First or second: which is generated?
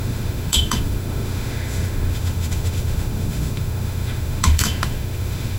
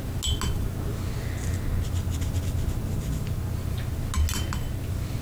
first